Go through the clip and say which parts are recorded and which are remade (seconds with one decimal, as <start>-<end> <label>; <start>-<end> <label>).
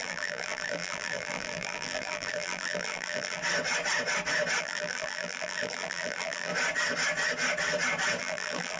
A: 0.0-3.4 remade; 3.4-4.6 recorded; 4.6-6.5 remade; 6.5-8.2 recorded; 8.2-8.8 remade